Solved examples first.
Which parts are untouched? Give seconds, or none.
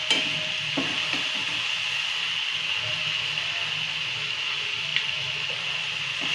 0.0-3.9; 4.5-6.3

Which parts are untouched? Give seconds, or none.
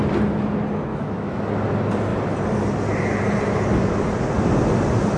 0.0-0.9; 1.5-5.2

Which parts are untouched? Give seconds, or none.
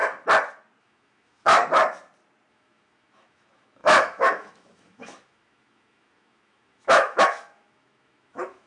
0.0-0.8; 1.6-2.5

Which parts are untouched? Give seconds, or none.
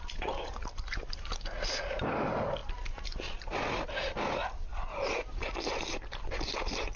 0.0-7.0